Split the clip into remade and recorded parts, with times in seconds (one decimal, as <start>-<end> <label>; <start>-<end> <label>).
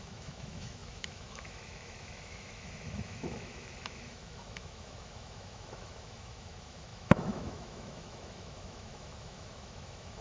0.0-10.2 remade